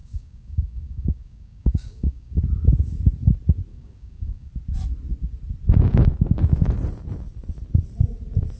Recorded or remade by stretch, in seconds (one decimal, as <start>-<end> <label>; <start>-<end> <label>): 0.0-2.4 remade; 2.4-3.7 recorded; 3.7-4.5 remade; 4.5-8.6 recorded